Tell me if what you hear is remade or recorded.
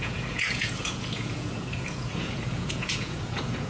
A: remade